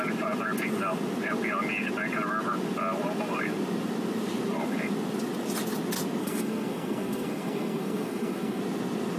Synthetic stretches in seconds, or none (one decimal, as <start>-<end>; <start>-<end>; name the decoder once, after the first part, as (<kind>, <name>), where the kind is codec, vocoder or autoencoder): 6.2-8.6 (codec, SNAC)